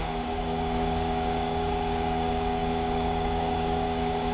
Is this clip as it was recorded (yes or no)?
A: no